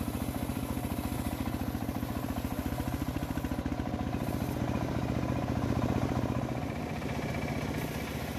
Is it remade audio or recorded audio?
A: recorded